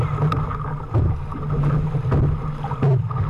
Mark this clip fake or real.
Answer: real